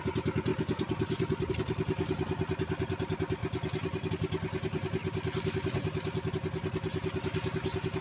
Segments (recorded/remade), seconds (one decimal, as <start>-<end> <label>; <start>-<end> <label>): 0.0-0.5 recorded; 0.5-1.5 remade; 1.5-3.4 recorded; 3.4-4.1 remade; 4.1-5.0 recorded; 5.0-6.3 remade; 6.3-8.0 recorded